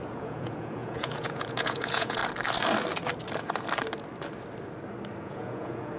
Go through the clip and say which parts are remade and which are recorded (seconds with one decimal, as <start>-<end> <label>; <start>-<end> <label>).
0.0-2.2 remade; 2.2-5.2 recorded; 5.2-6.0 remade